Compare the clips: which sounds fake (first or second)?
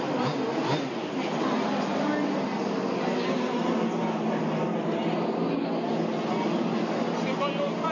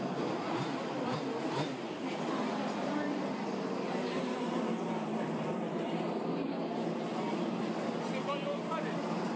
second